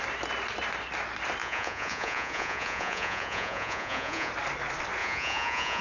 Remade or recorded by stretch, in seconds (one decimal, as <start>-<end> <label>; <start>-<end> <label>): 0.0-1.4 recorded; 1.4-4.3 remade; 4.3-5.0 recorded; 5.0-5.8 remade